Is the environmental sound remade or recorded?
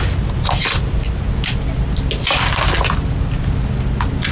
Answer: recorded